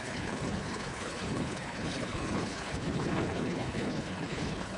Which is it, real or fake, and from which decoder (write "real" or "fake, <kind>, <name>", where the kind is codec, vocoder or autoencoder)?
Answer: fake, codec, HILCodec